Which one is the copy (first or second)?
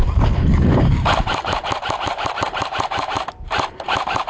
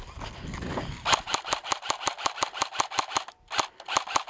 first